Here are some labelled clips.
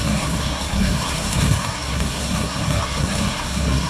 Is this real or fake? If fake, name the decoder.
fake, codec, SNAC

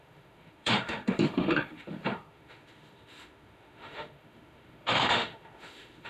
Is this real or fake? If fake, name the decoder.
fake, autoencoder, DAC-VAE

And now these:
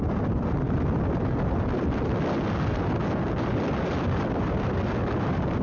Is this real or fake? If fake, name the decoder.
real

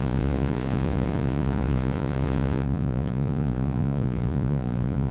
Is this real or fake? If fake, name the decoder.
fake, vocoder, Vocos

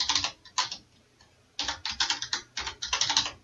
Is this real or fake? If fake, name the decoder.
real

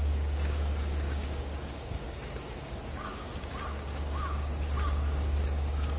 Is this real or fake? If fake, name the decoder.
fake, codec, DAC